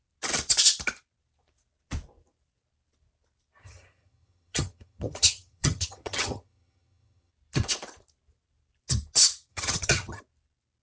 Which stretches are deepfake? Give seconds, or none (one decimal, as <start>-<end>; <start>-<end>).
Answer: 3.6-7.3; 9.5-10.2